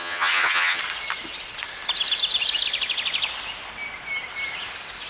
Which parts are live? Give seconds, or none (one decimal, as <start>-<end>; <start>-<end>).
0.8-5.1